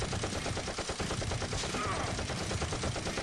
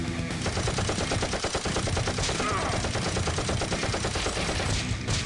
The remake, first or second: first